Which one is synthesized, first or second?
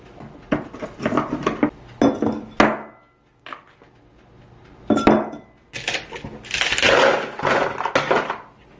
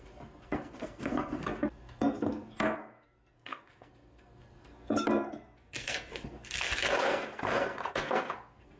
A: second